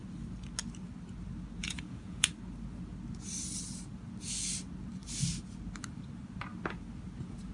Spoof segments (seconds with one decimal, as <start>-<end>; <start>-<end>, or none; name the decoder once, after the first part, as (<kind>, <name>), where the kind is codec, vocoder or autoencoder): 1.6-2.3 (vocoder, Vocos)